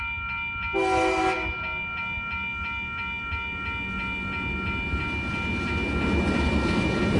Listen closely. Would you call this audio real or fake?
real